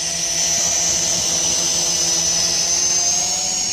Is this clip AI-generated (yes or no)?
no